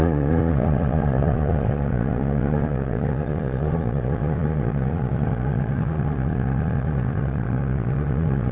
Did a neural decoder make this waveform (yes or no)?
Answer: yes